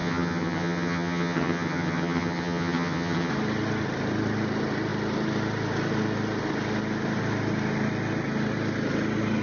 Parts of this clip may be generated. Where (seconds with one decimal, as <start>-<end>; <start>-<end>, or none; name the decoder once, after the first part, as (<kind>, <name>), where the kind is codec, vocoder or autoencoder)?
0.0-3.3 (vocoder, HiFi-GAN)